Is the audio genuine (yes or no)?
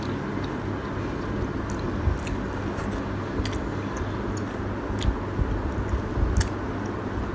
yes